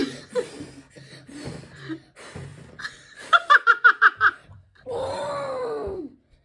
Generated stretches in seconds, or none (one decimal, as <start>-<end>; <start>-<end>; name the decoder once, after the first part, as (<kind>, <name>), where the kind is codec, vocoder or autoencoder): 0.0-1.4 (vocoder, BigVGAN v2); 2.5-6.0